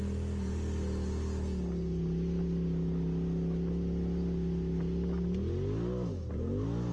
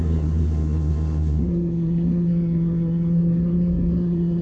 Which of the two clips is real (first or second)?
first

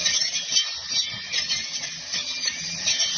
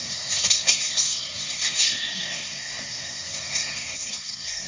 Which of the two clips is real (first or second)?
first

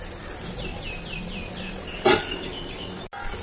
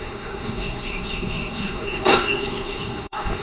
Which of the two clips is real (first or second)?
first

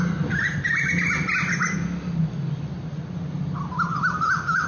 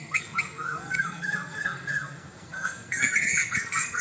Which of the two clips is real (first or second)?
first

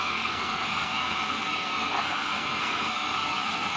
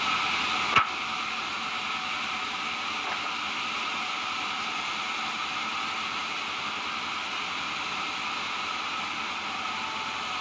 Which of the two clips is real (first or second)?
second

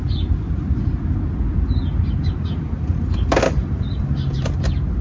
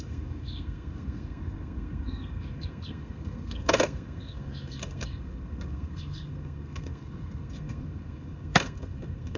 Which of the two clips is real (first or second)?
first